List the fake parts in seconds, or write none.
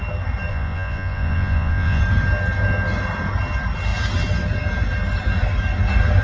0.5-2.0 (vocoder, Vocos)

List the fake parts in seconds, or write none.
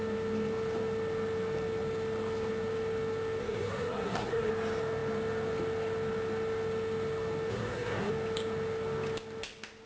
3.4-4.5 (codec, SNAC); 7.5-8.1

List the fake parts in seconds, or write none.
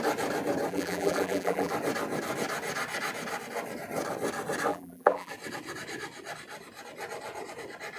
0.7-1.7 (vocoder, BigVGAN v2); 4.7-5.3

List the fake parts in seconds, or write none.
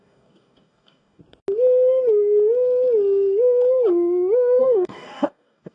0.0-1.2 (codec, DAC); 4.6-5.7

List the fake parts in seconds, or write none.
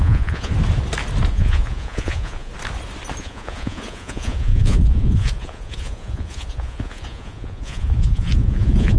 0.0-0.5 (vocoder, Vocos); 1.3-2.5; 3.2-9.0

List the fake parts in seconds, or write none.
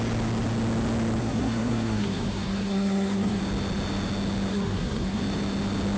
1.2-3.4 (codec, SNAC); 4.5-5.2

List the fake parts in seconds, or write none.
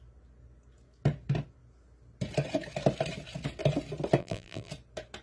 4.2-4.7 (vocoder, BigVGAN v2)